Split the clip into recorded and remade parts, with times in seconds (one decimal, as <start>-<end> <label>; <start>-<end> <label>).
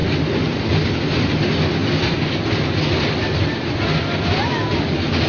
0.0-5.3 recorded